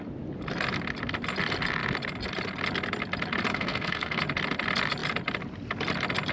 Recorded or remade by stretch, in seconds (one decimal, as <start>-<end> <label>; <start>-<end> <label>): 0.0-3.5 recorded; 3.5-4.2 remade; 4.2-6.3 recorded